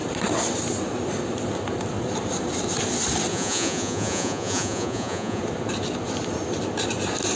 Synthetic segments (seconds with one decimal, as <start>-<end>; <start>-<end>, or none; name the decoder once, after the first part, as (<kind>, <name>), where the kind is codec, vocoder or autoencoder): 3.3-5.4 (vocoder, Vocos)